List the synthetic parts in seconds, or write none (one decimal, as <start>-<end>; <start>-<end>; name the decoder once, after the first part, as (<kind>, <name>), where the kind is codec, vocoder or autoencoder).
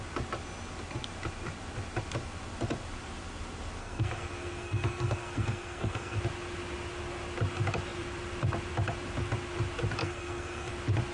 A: 3.8-6.2 (codec, SNAC); 10.0-10.7